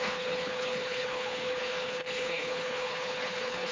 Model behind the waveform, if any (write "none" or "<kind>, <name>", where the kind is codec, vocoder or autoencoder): codec, HILCodec